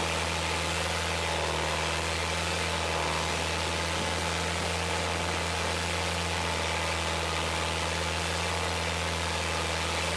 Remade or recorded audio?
recorded